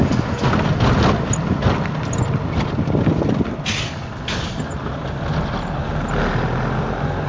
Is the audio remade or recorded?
recorded